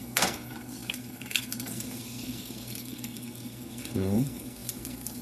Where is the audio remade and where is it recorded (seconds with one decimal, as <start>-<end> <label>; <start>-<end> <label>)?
0.0-5.2 remade